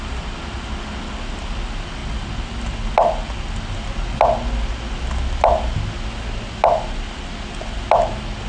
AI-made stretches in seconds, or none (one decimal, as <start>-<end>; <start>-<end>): none